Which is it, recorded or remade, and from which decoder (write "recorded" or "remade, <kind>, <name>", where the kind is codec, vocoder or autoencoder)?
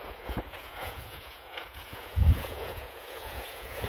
remade, vocoder, Vocos